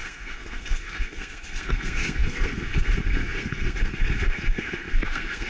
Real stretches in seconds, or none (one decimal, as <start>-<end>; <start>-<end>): none